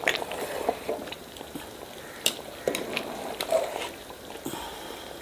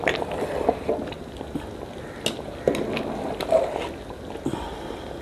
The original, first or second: second